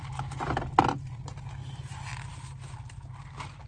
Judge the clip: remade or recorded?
recorded